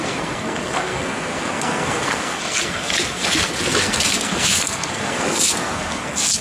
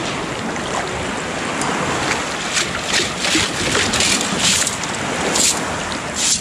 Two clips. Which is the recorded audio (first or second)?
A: second